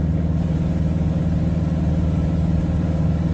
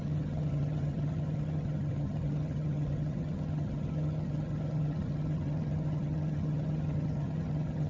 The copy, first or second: second